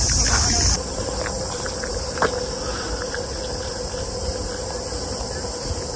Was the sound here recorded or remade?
recorded